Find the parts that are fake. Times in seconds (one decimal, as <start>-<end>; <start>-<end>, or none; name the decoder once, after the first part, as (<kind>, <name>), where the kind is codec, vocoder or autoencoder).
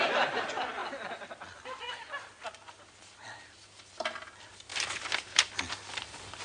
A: none